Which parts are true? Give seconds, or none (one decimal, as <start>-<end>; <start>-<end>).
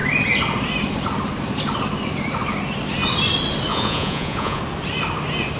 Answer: 0.0-3.7; 4.6-5.6